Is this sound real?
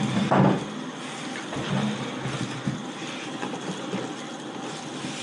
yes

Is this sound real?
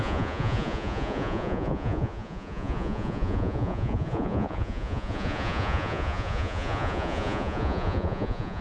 no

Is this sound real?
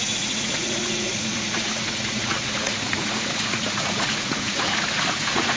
no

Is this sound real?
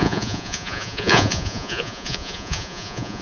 no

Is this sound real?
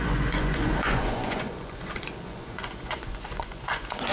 no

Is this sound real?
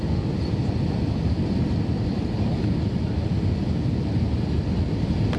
yes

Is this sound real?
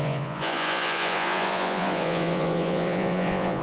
no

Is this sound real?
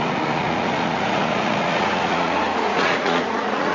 no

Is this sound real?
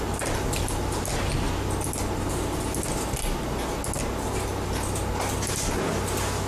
yes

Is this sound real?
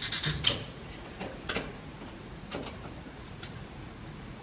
no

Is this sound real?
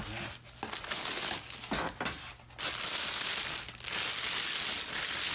yes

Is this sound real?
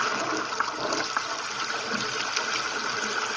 yes